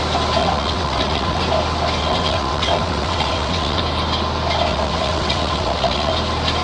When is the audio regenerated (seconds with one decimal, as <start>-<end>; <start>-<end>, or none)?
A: 0.4-1.4; 2.0-3.8; 4.7-6.1